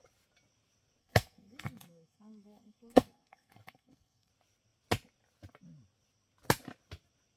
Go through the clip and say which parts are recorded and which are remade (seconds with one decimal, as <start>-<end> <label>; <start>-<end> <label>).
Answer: 0.0-1.0 recorded; 1.0-4.3 remade; 4.3-7.4 recorded